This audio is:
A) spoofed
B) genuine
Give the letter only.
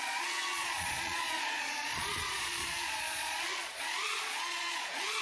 A